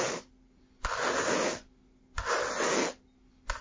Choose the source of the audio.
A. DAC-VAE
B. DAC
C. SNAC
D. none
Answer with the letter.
D